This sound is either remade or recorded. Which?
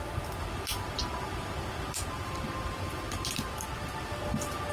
recorded